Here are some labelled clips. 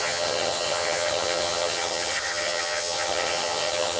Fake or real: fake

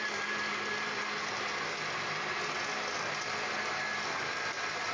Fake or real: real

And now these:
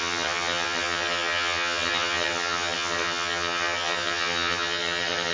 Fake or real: fake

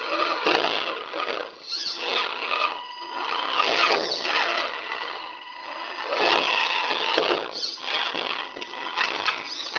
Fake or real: fake